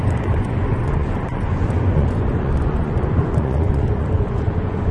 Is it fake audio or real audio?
fake